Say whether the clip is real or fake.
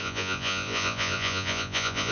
fake